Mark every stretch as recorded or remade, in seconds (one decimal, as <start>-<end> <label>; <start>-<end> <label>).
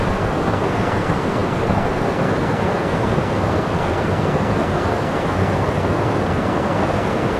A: 0.0-7.4 remade